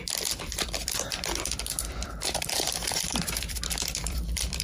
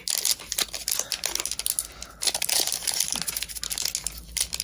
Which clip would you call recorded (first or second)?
second